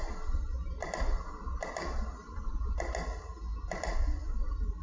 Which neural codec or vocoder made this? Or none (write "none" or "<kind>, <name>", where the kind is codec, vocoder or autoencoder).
none